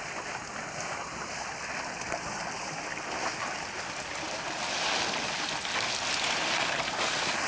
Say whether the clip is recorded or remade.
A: recorded